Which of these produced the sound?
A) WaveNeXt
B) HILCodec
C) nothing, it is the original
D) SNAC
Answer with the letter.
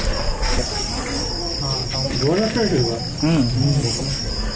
C